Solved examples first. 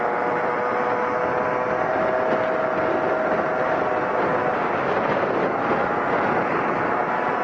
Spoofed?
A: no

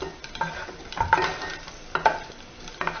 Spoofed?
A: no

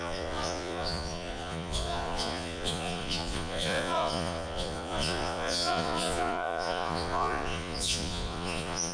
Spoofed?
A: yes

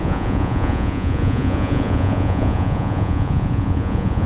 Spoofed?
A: yes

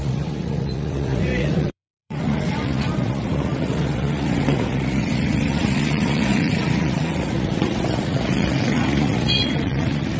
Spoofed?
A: yes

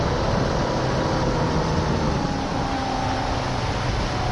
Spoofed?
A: no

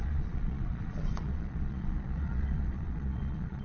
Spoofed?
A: yes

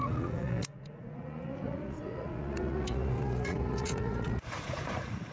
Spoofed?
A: yes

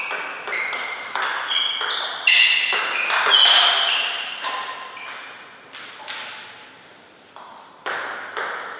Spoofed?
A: no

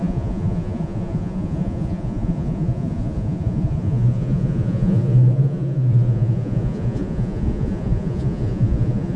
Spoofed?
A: yes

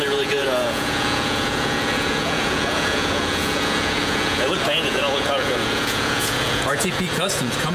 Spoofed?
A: yes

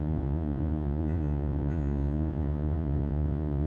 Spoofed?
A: yes